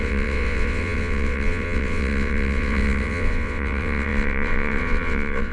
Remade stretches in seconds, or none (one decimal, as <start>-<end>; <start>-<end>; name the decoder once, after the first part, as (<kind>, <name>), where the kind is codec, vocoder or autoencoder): 0.0-5.5 (vocoder, WaveNeXt)